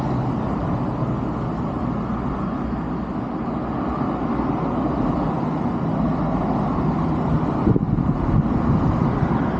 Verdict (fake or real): real